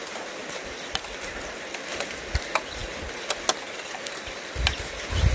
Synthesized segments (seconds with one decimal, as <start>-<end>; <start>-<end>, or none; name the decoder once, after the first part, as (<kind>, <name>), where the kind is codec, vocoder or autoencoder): none